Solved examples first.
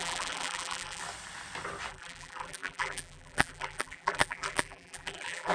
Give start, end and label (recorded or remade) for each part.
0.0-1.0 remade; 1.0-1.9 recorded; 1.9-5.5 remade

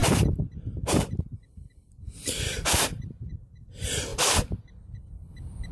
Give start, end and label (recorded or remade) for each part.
0.0-5.7 remade

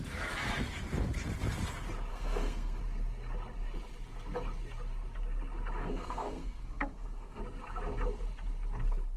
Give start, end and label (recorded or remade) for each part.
0.0-2.1 recorded; 2.1-2.8 remade; 2.8-5.8 recorded; 5.8-7.4 remade; 7.4-9.2 recorded

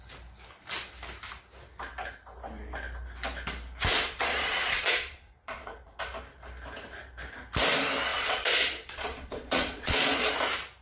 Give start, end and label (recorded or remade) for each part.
0.0-3.9 recorded; 3.9-6.0 remade; 6.0-8.1 recorded; 8.1-10.3 remade; 10.3-10.8 recorded

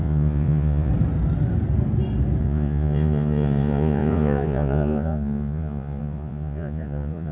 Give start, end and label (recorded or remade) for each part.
0.0-0.9 remade; 0.9-2.4 recorded; 2.4-7.3 remade

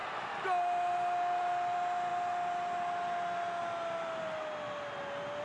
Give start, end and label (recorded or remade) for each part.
0.0-5.4 recorded